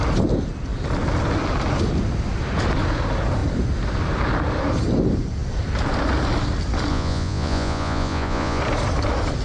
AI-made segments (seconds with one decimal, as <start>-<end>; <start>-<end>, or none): 6.9-8.6

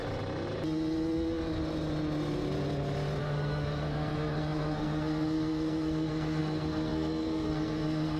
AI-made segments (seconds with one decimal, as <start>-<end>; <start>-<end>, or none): 3.2-8.2

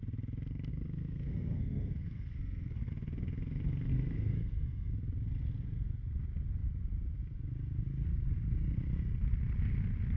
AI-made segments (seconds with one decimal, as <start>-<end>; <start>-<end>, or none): 0.7-2.9; 3.9-4.9

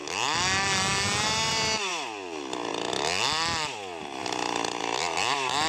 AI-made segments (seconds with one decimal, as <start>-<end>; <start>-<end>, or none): none

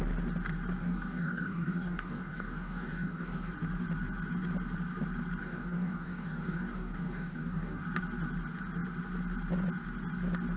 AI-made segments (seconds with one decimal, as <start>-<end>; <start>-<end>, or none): 0.8-3.5; 5.4-7.8

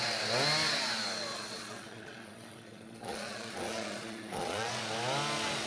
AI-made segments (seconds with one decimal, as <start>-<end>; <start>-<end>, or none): 1.3-4.7